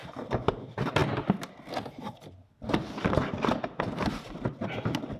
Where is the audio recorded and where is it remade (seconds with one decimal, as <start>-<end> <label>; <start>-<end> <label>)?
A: 0.0-5.2 recorded